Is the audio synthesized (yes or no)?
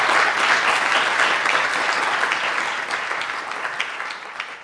no